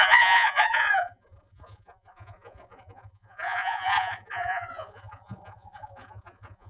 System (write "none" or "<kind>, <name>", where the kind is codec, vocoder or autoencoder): vocoder, Vocos